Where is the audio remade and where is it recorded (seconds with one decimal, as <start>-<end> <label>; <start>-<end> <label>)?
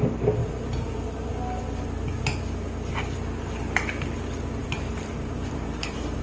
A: 0.0-0.4 recorded; 0.4-1.3 remade; 1.3-4.6 recorded; 4.6-6.2 remade